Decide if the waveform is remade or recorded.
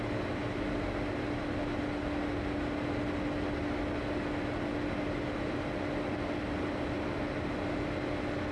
recorded